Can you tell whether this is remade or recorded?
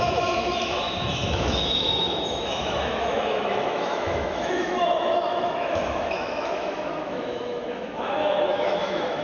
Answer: remade